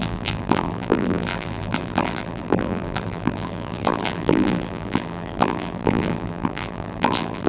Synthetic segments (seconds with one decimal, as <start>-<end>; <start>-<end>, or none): 0.0-7.5